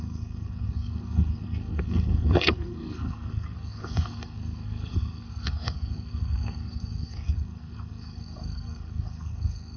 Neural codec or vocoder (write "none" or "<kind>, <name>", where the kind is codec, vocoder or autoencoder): codec, SNAC